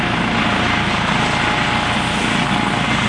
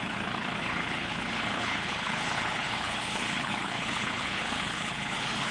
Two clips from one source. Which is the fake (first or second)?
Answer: second